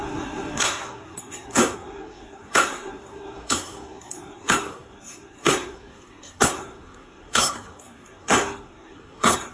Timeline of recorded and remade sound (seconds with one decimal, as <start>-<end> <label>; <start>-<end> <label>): 0.0-9.5 remade